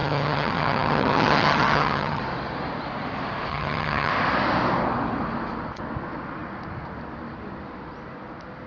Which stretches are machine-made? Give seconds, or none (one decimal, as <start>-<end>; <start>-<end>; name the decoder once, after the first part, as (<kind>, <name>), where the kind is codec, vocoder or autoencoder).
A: 0.0-2.2 (vocoder, HiFi-GAN); 3.5-4.1